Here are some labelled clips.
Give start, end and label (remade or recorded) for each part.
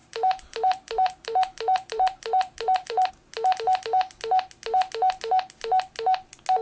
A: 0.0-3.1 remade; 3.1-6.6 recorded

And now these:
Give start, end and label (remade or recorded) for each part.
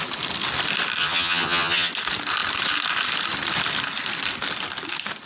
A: 0.0-1.0 recorded; 1.0-1.9 remade; 1.9-5.3 recorded